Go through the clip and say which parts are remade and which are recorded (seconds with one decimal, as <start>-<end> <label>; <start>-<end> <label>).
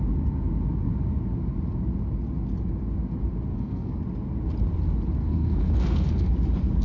0.0-3.5 recorded; 3.5-4.0 remade; 4.0-5.2 recorded; 5.2-6.3 remade; 6.3-6.8 recorded